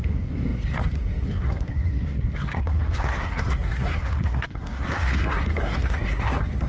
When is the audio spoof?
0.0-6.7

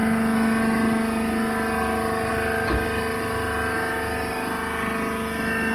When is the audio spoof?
none